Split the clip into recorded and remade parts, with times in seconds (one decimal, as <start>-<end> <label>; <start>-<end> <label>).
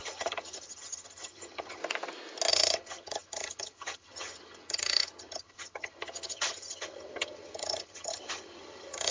0.0-1.8 remade; 1.8-2.5 recorded; 2.5-9.1 remade